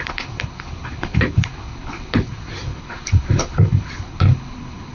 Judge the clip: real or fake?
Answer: fake